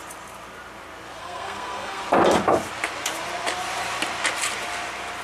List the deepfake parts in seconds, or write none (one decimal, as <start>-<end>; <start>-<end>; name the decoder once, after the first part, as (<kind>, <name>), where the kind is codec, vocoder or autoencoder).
1.2-2.0 (codec, SNAC)